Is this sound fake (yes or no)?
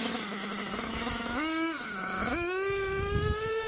yes